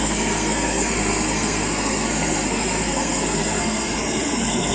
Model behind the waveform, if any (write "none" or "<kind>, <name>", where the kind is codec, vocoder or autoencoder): codec, SNAC